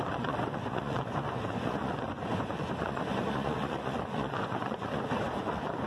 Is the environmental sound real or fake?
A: fake